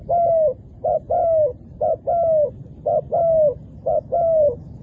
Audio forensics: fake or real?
real